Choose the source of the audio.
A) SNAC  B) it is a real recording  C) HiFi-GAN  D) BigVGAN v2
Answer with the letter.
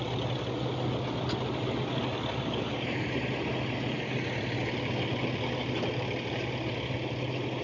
B